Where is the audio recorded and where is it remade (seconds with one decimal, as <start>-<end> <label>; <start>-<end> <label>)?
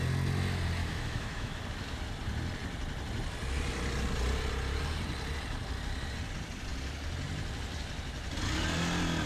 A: 0.0-0.8 recorded; 0.8-1.6 remade; 1.6-9.3 recorded